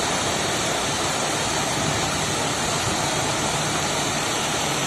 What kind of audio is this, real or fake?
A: fake